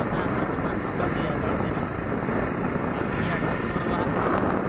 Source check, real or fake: real